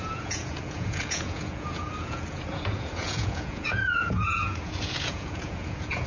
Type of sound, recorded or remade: remade